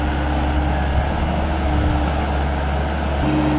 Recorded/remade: recorded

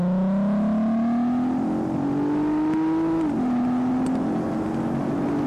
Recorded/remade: recorded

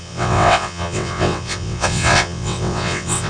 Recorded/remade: remade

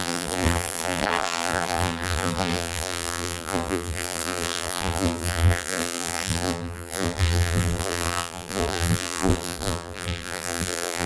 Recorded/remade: remade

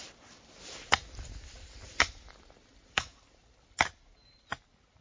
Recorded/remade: recorded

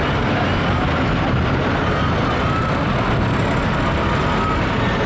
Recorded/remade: recorded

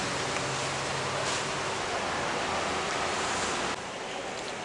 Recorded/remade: recorded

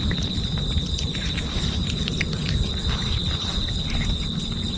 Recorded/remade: recorded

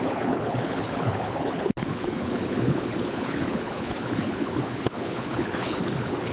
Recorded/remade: remade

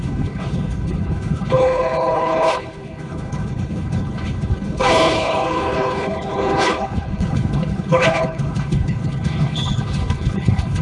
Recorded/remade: remade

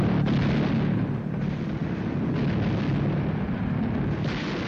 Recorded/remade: recorded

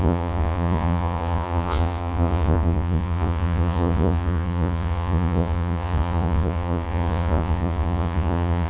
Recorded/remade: remade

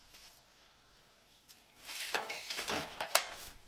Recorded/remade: remade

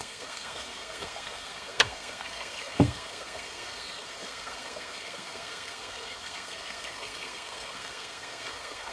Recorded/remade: remade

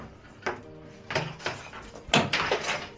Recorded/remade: recorded